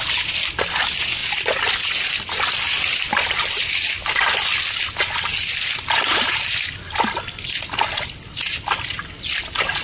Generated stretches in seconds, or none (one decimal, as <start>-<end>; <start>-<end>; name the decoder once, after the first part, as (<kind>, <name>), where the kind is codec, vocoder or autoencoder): none